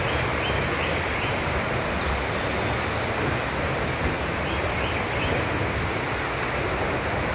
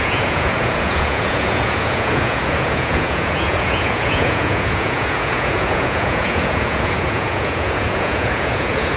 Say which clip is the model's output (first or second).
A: second